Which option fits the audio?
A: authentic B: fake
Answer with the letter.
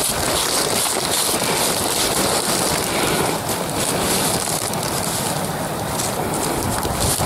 A